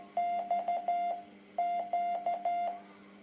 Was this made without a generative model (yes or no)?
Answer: yes